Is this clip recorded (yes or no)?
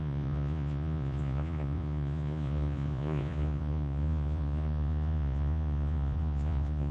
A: no